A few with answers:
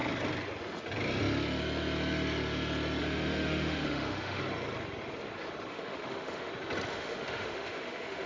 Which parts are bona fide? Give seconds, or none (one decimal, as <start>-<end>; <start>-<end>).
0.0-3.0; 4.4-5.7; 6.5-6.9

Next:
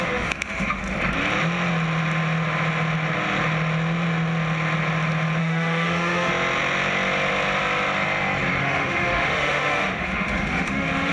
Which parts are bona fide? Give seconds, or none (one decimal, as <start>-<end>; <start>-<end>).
0.8-5.4; 6.3-8.6

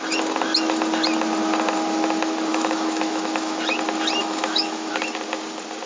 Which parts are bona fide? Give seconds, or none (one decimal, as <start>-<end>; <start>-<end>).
0.0-2.5; 3.6-4.2; 4.9-5.9

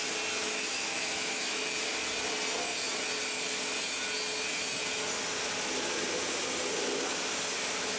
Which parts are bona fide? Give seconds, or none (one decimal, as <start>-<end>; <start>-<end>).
0.0-0.4; 1.6-8.0

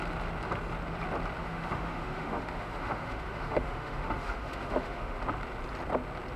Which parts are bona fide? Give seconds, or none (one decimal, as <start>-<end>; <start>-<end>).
0.0-1.4; 5.2-6.4